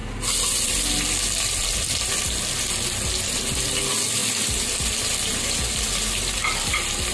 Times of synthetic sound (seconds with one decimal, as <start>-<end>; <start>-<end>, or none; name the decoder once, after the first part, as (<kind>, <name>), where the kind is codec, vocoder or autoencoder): none